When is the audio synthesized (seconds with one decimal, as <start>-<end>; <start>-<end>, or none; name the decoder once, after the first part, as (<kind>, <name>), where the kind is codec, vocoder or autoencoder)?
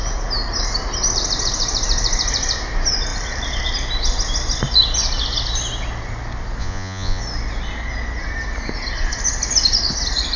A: 6.6-7.2 (vocoder, Vocos)